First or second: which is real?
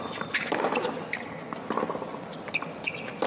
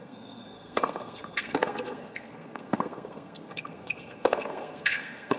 first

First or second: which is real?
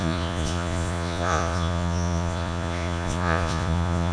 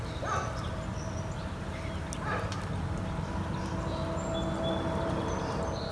second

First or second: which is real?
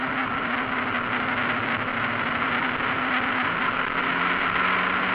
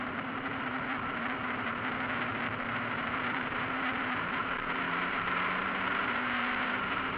first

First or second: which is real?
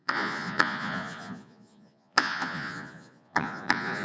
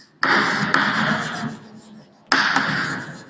second